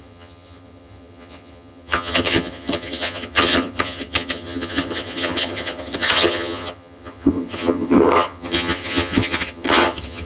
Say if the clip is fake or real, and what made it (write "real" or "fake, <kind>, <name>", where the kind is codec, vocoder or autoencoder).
fake, vocoder, HiFi-GAN